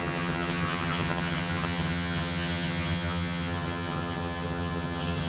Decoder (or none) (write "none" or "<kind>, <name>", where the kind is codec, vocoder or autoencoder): vocoder, HiFi-GAN